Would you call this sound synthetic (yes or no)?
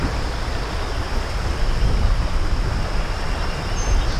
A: no